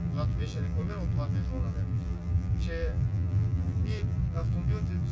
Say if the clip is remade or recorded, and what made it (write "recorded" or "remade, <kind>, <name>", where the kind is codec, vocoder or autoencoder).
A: remade, vocoder, BigVGAN v2